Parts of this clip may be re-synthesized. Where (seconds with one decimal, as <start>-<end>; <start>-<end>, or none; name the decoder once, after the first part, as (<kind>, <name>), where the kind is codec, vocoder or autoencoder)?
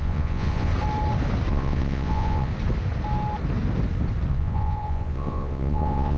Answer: 0.0-0.7 (vocoder, Vocos); 1.5-2.5; 4.3-6.2